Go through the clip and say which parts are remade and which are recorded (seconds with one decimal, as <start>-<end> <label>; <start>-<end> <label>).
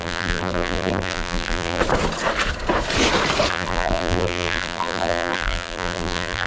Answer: 0.0-1.8 remade; 1.8-3.5 recorded; 3.5-6.5 remade